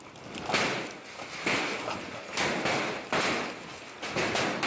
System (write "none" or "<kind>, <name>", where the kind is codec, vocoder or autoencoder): none